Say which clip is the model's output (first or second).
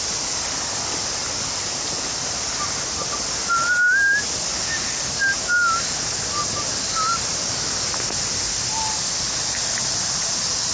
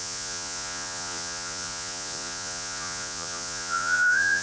second